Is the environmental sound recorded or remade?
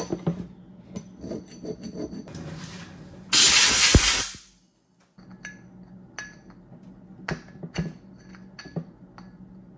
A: recorded